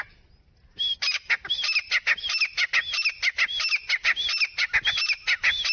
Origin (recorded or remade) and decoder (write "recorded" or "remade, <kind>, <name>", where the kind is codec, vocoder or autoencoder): recorded